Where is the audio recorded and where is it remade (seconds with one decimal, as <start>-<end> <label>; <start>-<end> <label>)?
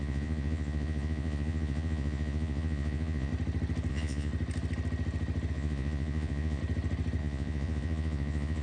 0.0-3.3 remade; 3.3-3.9 recorded; 3.9-4.3 remade; 4.3-5.5 recorded; 5.5-6.6 remade; 6.6-7.2 recorded; 7.2-8.6 remade